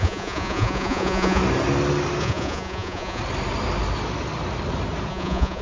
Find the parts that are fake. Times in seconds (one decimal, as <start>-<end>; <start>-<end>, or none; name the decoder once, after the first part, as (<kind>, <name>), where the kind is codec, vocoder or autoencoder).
0.0-1.4 (vocoder, Vocos); 2.2-3.2; 5.1-5.6